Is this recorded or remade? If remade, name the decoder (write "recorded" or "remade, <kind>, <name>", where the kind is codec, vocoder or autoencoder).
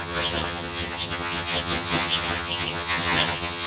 remade, vocoder, HiFi-GAN